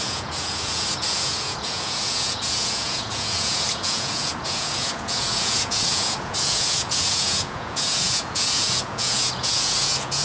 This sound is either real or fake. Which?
fake